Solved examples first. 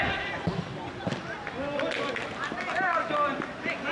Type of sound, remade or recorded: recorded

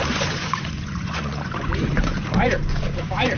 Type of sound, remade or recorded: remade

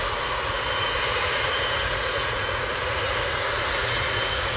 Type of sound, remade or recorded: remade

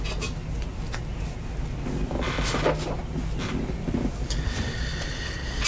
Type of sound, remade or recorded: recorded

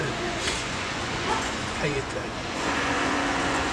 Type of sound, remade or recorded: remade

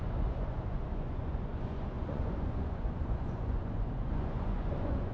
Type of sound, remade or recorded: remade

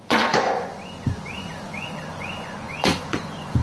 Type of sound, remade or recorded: remade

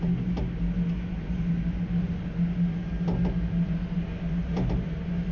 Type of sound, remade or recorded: recorded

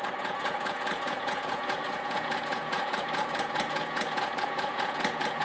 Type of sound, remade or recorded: remade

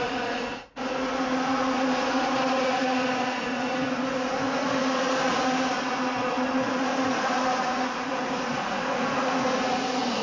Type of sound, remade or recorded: remade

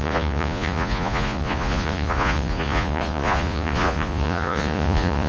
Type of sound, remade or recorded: remade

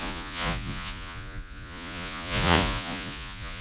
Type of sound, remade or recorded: remade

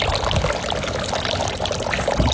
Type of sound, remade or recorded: recorded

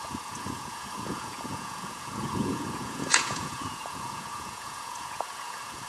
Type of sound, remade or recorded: remade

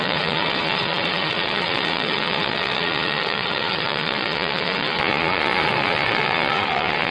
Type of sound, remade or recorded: remade